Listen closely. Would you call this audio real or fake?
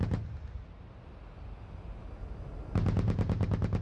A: real